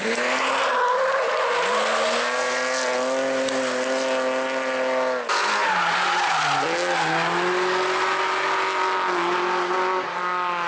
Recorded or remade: recorded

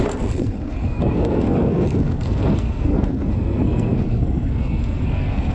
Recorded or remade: remade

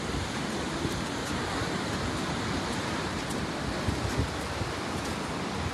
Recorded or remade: recorded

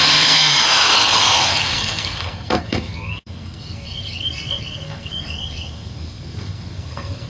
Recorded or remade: remade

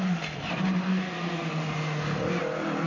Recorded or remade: recorded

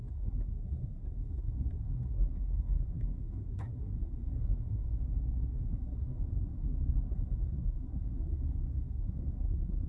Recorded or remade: remade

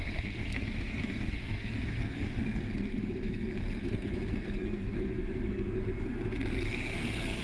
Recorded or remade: remade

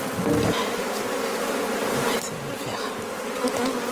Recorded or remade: recorded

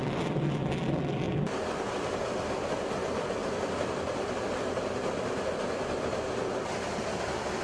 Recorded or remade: recorded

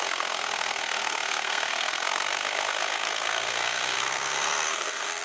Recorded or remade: remade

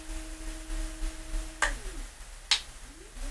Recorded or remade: recorded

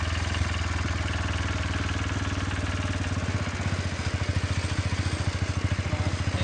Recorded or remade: recorded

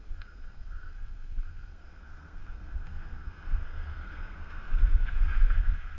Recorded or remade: remade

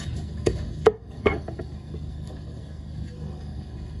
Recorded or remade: remade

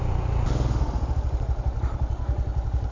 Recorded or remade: recorded